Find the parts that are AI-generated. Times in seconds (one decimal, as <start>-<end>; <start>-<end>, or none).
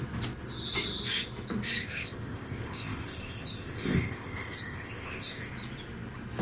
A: 1.8-5.5